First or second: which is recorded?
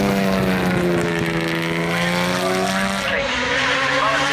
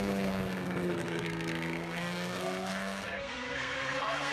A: first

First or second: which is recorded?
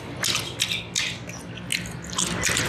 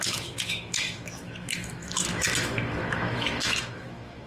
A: first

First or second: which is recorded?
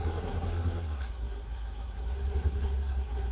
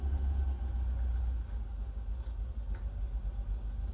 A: second